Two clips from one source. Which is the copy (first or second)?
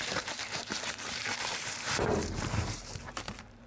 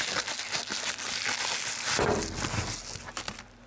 first